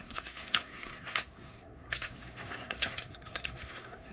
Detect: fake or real fake